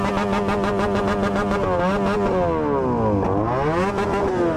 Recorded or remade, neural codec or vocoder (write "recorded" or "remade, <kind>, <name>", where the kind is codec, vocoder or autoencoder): recorded